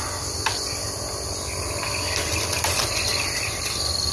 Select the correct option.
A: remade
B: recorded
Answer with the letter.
B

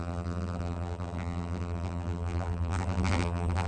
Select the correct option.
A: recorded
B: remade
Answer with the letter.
B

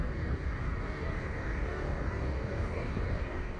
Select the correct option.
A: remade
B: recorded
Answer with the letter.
A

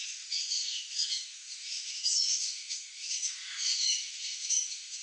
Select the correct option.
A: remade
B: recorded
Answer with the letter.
A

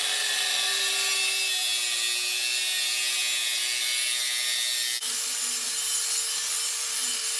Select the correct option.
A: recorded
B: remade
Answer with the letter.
A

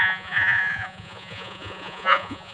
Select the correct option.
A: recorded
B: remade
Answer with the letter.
B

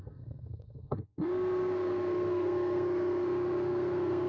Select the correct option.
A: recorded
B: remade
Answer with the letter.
B